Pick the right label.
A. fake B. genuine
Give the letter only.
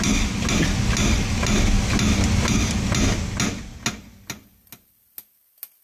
B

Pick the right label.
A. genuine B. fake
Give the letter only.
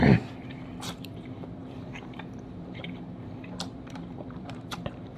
B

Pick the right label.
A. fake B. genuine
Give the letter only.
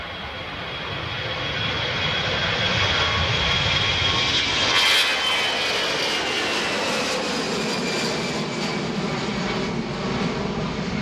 B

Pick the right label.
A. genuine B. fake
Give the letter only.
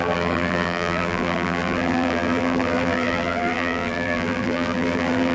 B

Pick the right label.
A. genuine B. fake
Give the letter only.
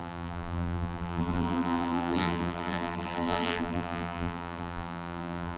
B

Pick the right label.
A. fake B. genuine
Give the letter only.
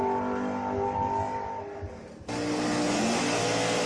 B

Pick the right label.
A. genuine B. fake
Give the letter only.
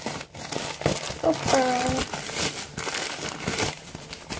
A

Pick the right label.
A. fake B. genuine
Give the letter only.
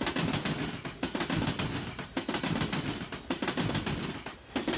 B